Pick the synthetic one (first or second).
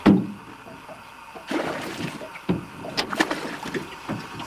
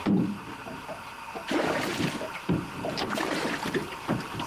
second